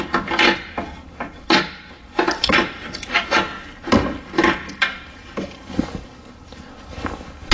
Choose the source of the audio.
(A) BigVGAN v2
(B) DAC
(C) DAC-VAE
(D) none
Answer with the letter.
D